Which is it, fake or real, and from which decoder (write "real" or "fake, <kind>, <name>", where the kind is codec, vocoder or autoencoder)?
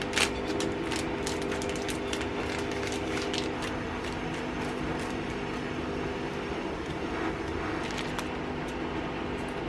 real